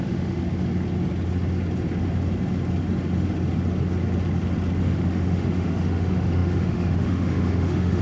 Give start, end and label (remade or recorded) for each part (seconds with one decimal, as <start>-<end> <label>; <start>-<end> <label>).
0.0-0.4 remade; 0.4-4.8 recorded; 4.8-8.0 remade